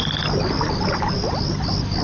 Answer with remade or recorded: recorded